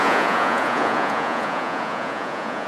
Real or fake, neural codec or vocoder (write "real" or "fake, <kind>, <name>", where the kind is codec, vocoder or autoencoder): fake, vocoder, Vocos